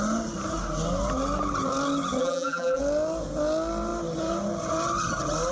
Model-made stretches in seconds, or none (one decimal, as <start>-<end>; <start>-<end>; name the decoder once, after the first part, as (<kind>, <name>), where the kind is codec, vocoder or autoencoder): 2.2-2.8 (vocoder, BigVGAN v2)